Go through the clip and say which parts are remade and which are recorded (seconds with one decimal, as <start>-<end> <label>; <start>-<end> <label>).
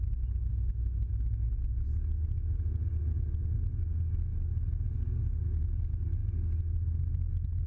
0.0-0.5 recorded; 0.5-1.1 remade; 1.1-7.7 recorded